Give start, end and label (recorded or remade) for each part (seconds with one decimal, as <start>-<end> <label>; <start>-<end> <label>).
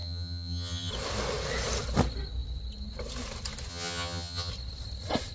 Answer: 0.0-0.9 remade; 0.9-3.7 recorded; 3.7-4.5 remade; 4.5-5.3 recorded